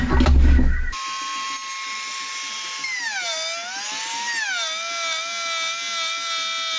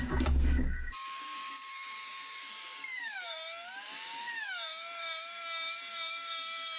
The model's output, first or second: second